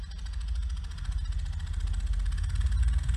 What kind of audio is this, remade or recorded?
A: recorded